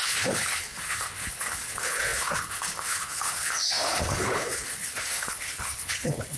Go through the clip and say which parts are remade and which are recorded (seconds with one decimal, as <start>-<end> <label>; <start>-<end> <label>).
0.0-6.4 remade